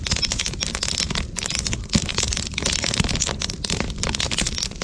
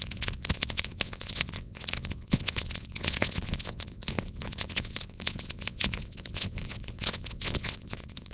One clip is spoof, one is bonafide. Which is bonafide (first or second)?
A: first